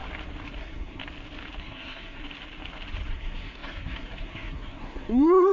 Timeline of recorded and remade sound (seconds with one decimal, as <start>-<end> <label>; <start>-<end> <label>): 0.0-0.6 recorded; 0.6-1.0 remade; 1.0-1.6 recorded; 1.6-2.2 remade; 2.2-3.1 recorded; 3.1-5.5 remade